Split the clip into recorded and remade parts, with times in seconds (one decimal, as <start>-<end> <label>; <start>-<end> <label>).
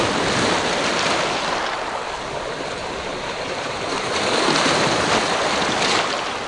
0.0-2.8 recorded; 2.8-4.1 remade; 4.1-6.5 recorded